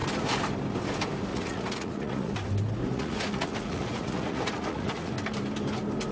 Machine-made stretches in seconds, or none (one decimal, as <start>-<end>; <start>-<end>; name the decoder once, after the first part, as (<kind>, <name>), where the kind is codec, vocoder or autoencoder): 1.3-2.3 (vocoder, Vocos); 2.9-5.1